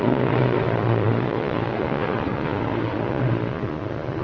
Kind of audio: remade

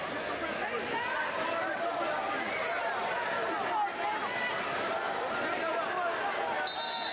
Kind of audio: recorded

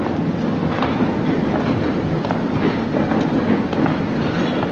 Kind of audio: recorded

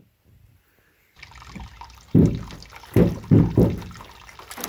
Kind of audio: recorded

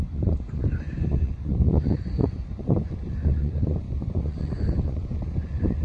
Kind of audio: remade